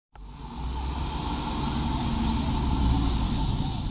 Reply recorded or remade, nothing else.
recorded